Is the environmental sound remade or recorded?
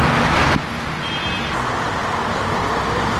recorded